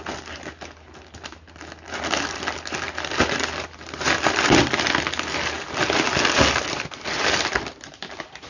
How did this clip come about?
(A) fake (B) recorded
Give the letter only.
B